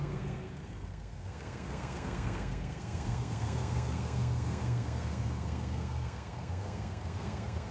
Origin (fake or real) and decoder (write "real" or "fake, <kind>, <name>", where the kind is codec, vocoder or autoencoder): fake, codec, SNAC